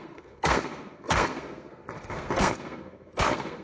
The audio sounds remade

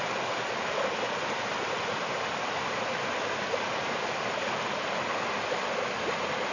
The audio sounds recorded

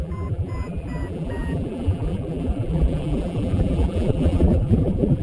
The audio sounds remade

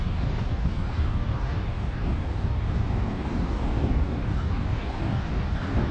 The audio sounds remade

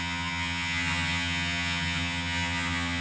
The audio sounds remade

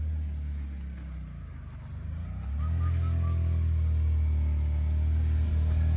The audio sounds recorded